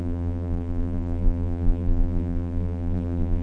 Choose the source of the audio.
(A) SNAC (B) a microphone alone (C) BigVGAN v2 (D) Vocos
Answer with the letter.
C